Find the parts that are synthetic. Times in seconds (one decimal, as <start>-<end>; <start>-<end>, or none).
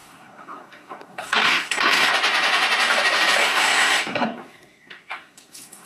0.0-2.1; 3.4-5.9